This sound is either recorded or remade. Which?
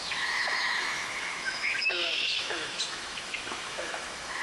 remade